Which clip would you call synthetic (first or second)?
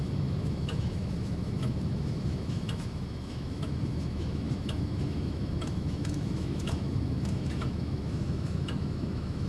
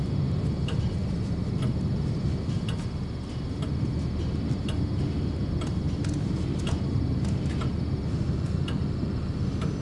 first